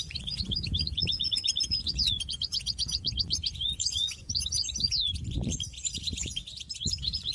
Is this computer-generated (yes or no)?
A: yes